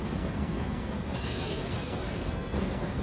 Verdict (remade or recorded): remade